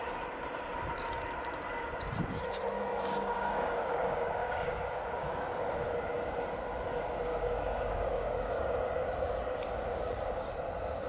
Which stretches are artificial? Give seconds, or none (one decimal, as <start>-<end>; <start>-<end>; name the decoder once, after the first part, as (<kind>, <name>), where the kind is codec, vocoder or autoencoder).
2.9-5.5 (codec, DAC); 7.3-8.6; 9.9-10.5